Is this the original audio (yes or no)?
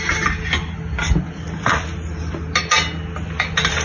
yes